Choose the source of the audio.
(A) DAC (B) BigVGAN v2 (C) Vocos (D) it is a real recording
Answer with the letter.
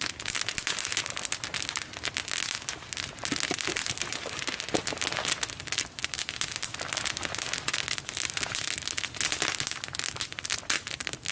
D